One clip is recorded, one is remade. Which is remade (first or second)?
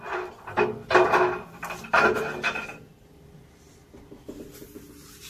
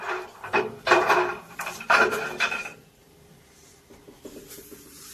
second